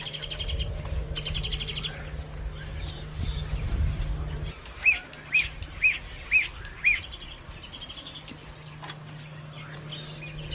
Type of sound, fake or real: real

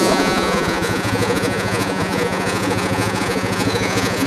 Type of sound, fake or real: fake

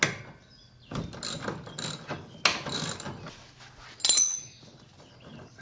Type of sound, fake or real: real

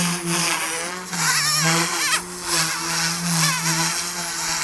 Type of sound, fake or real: real